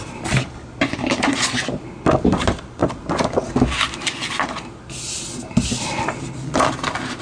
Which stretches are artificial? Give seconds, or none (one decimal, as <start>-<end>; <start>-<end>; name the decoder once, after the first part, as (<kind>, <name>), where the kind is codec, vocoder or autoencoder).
none